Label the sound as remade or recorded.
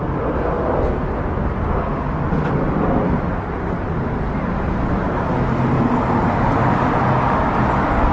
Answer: recorded